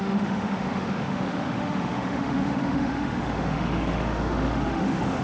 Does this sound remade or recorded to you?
remade